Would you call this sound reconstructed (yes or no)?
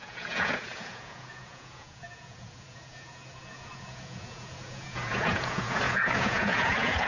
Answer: yes